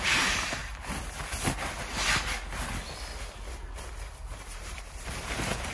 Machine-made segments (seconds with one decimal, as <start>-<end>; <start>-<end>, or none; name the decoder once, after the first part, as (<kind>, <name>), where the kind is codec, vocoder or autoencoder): 0.0-0.6 (vocoder, BigVGAN v2); 4.0-5.7